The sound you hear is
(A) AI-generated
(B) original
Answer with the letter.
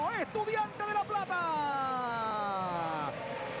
A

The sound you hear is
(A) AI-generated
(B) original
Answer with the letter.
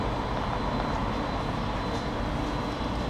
B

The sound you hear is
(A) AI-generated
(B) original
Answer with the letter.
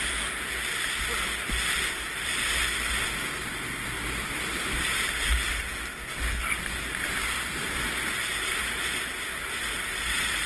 B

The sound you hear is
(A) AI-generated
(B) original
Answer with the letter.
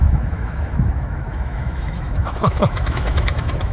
A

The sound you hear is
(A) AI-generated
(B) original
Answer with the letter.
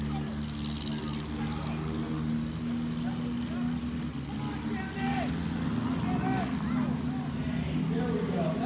B